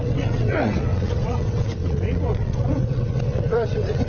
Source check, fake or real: fake